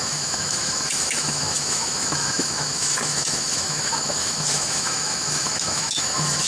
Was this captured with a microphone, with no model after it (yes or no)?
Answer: no